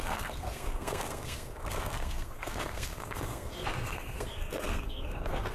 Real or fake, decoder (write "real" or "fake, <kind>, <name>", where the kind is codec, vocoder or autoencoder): fake, codec, SNAC